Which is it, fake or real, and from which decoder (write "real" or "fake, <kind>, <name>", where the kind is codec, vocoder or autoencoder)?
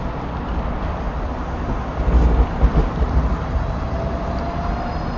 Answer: real